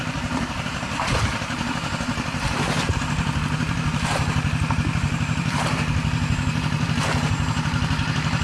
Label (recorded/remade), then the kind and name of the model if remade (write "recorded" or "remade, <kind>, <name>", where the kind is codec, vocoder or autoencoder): remade, vocoder, BigVGAN v2